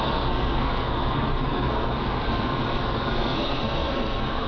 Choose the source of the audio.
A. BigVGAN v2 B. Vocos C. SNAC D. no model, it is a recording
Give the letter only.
C